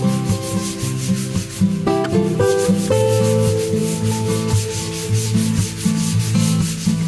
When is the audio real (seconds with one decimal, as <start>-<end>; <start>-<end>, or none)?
0.0-7.1